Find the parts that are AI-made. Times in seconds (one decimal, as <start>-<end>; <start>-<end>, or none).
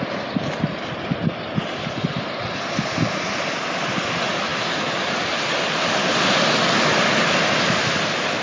none